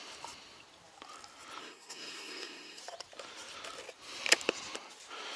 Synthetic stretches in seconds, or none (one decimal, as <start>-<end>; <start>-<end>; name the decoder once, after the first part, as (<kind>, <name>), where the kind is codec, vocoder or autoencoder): 1.6-2.8 (codec, SNAC)